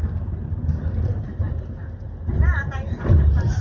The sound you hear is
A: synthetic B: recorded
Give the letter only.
B